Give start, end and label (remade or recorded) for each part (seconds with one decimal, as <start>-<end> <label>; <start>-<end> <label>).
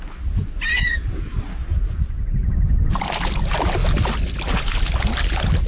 0.0-5.7 recorded